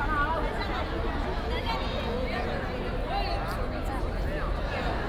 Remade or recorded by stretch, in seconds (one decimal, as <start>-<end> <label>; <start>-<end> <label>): 0.0-5.1 recorded